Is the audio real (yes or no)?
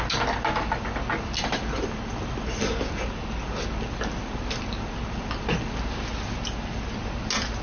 yes